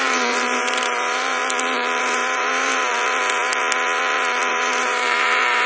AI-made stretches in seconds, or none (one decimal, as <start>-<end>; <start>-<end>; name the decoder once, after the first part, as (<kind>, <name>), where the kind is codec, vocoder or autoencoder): 0.0-1.4 (vocoder, BigVGAN v2); 2.0-2.9; 4.5-5.7